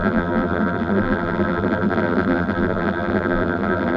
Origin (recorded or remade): remade